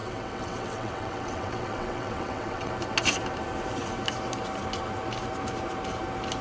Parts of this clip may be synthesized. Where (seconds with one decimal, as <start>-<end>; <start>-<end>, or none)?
0.0-2.7